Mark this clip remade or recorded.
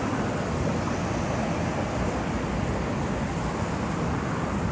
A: recorded